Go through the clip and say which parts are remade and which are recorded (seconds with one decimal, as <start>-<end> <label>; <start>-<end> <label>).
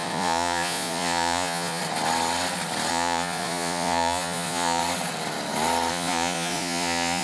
0.0-1.8 remade; 1.8-2.9 recorded; 2.9-4.8 remade; 4.8-5.9 recorded; 5.9-7.2 remade